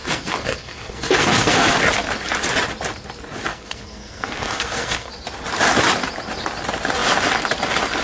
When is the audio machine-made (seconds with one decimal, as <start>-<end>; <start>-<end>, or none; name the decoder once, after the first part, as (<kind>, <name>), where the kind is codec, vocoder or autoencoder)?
0.0-1.7 (codec, SNAC); 3.5-5.1